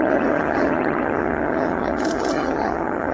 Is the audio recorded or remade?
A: remade